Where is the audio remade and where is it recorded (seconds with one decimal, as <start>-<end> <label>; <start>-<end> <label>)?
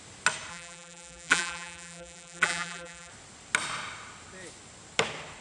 0.0-0.5 recorded; 0.5-3.1 remade; 3.1-5.4 recorded